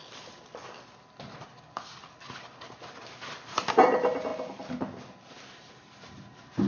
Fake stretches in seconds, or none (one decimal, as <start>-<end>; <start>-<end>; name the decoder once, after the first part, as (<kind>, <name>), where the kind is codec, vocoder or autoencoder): none